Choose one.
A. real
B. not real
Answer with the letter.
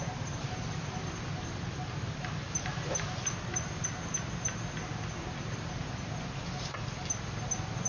A